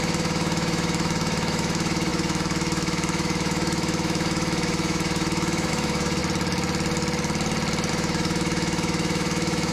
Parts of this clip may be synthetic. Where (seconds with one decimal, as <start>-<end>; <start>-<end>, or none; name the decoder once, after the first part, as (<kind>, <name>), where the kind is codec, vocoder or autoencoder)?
0.0-6.2 (autoencoder, DAC-VAE); 7.9-9.7